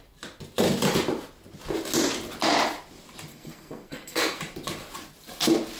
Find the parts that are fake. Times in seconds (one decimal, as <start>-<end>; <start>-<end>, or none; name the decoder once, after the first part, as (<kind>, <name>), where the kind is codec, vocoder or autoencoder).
3.3-4.4 (codec, SNAC)